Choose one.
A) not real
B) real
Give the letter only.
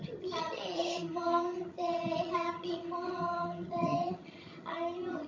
A